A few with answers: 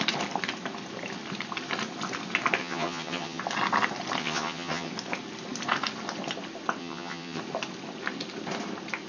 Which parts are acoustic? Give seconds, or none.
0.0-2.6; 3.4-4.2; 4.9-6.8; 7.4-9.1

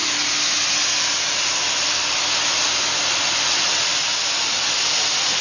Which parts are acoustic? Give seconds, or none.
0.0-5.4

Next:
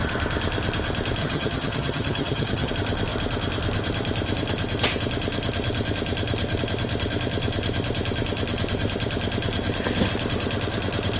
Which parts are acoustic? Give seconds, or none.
0.0-1.2; 2.7-11.2